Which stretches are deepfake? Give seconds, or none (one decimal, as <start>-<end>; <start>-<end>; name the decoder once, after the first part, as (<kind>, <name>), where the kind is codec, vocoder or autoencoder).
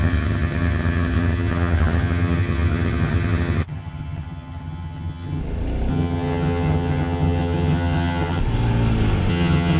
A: 0.0-5.4 (vocoder, HiFi-GAN); 5.9-8.4; 9.3-9.8